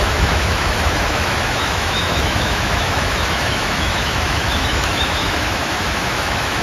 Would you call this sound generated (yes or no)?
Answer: yes